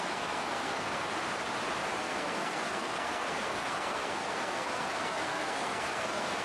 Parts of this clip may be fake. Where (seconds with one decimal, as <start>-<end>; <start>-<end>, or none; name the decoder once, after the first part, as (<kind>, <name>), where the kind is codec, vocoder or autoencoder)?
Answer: 0.0-1.1 (codec, SNAC); 1.9-6.4